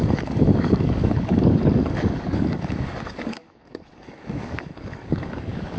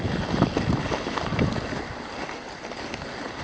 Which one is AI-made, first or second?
first